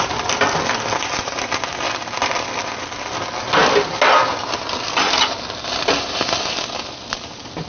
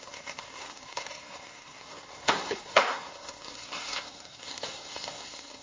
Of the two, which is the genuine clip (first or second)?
first